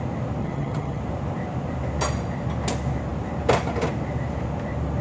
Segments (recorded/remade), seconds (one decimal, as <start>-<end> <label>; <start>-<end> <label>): 0.0-0.4 recorded; 0.4-1.0 remade; 1.0-5.0 recorded